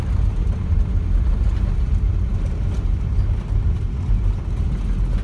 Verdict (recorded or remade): recorded